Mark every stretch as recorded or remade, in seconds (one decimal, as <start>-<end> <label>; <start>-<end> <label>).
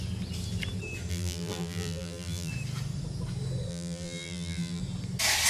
0.0-1.1 recorded; 1.1-2.5 remade; 2.5-3.7 recorded; 3.7-4.8 remade; 4.8-5.5 recorded